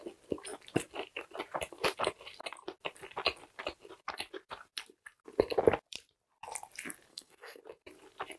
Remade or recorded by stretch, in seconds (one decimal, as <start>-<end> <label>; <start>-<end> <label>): 0.0-7.1 recorded; 7.1-7.6 remade; 7.6-8.4 recorded